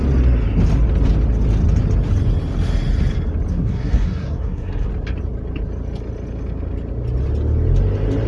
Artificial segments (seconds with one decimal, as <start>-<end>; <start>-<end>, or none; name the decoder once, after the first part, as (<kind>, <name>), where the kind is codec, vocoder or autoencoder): 3.5-4.9 (codec, SNAC)